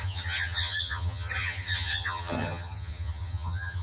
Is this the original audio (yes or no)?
no